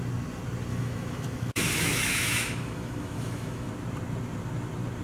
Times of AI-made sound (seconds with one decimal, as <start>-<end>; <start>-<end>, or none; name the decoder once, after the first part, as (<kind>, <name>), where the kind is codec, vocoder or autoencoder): 0.7-3.7 (autoencoder, DAC-VAE)